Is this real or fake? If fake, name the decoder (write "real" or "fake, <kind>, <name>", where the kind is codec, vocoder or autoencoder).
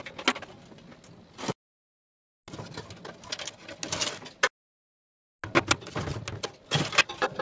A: real